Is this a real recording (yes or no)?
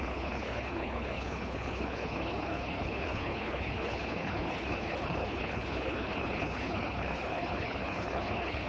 no